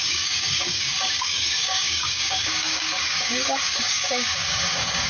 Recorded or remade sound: remade